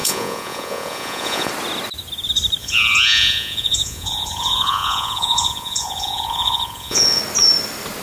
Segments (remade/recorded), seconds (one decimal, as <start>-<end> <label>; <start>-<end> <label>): 0.0-1.5 remade; 1.5-2.6 recorded; 2.6-7.2 remade; 7.2-8.0 recorded